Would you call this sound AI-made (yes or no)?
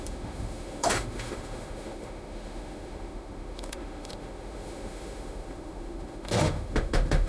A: yes